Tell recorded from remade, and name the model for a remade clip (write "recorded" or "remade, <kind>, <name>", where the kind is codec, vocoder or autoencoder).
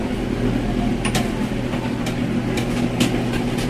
recorded